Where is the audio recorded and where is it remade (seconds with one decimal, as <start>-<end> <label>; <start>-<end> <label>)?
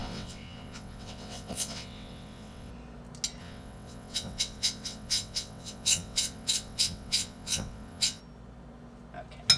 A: 0.0-2.7 remade; 2.7-3.4 recorded; 3.4-8.2 remade; 8.2-9.6 recorded